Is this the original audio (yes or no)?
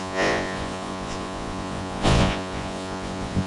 no